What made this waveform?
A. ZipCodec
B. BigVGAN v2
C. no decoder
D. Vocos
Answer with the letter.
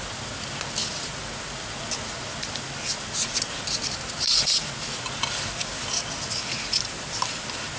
C